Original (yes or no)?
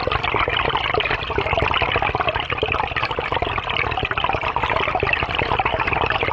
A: yes